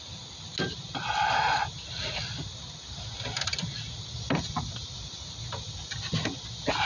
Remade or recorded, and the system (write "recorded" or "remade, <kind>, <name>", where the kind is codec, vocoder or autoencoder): recorded